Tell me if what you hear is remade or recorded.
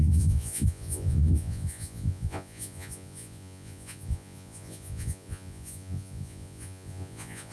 remade